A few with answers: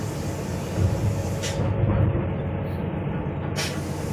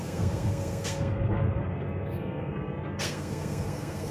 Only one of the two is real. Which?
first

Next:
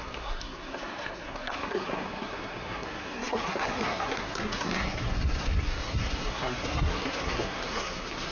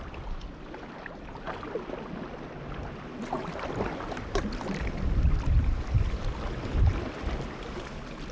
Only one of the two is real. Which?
second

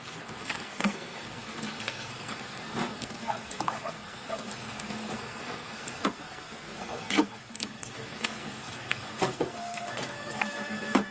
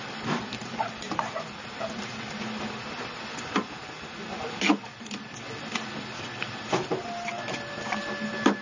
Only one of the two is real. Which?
second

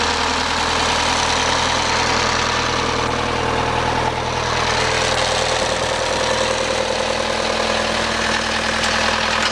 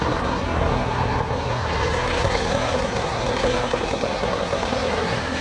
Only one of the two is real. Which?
first